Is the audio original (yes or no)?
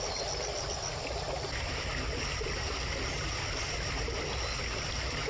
yes